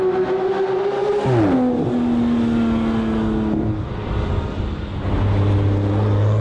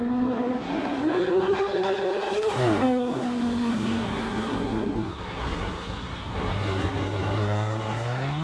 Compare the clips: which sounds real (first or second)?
first